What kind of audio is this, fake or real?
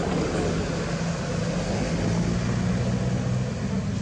real